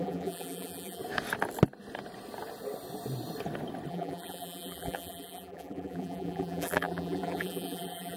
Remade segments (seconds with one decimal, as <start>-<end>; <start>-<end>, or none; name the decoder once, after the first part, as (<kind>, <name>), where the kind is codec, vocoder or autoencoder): 0.0-1.0 (vocoder, BigVGAN v2); 3.9-8.2